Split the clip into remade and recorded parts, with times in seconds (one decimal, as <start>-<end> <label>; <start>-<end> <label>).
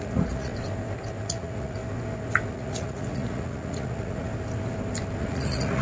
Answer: 0.0-0.5 remade; 0.5-1.2 recorded; 1.2-1.8 remade; 1.8-2.5 recorded; 2.5-4.3 remade; 4.3-5.2 recorded; 5.2-5.8 remade